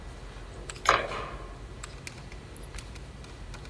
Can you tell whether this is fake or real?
real